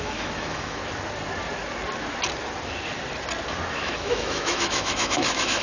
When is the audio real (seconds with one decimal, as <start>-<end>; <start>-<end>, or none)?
0.8-3.7